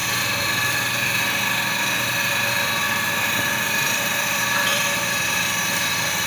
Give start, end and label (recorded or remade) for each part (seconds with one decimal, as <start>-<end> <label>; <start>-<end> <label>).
0.0-3.8 recorded; 3.8-6.3 remade